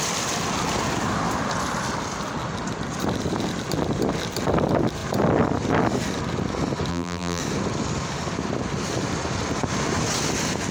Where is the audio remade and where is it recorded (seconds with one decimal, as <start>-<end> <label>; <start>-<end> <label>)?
0.0-6.9 recorded; 6.9-7.4 remade; 7.4-10.7 recorded